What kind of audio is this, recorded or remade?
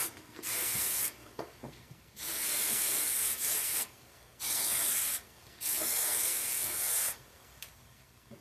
remade